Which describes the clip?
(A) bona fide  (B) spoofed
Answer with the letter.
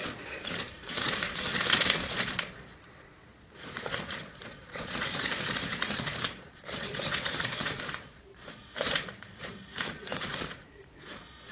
B